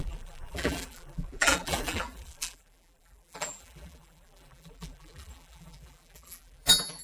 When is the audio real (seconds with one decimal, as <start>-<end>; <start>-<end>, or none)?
none